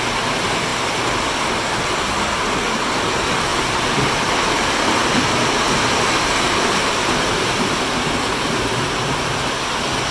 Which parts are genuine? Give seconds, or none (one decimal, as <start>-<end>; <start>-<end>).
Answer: 0.0-3.5; 8.0-10.1